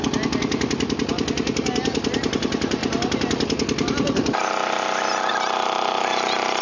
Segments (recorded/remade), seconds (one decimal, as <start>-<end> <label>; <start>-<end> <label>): 0.0-6.6 recorded